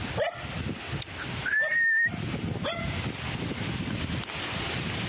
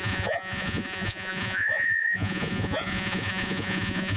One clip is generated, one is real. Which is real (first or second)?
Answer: first